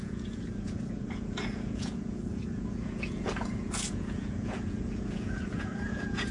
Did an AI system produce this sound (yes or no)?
yes